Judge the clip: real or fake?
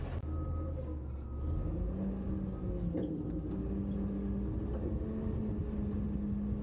real